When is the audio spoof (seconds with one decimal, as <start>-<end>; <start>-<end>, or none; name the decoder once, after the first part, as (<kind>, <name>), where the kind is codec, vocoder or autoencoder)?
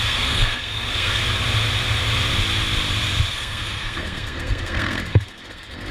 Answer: 0.0-1.2 (codec, SNAC); 3.3-5.9